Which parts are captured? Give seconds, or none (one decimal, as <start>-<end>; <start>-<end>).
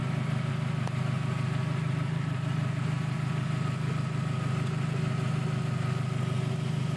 0.0-7.0